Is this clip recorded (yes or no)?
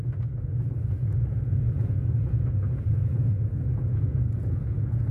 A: no